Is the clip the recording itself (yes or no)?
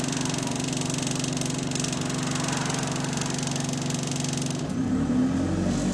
yes